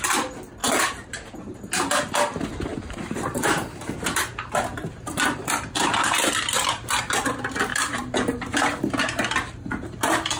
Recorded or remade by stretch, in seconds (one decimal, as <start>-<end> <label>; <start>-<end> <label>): 0.0-0.6 recorded; 0.6-1.7 remade; 1.7-2.7 recorded; 2.7-6.3 remade; 6.3-7.7 recorded; 7.7-8.8 remade; 8.8-10.4 recorded